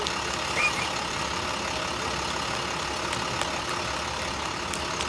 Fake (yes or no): no